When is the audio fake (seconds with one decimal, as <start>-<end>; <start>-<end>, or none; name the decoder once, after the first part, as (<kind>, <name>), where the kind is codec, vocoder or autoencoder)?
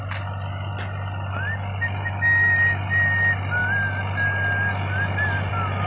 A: none